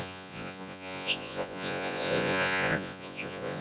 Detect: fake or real fake